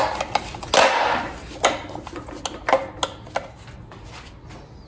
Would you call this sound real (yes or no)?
yes